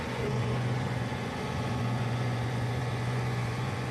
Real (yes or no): no